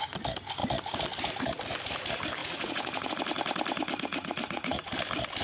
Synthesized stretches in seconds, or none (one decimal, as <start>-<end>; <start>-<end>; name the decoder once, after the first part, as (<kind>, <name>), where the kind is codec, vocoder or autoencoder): 2.4-3.1 (vocoder, Vocos); 4.1-4.9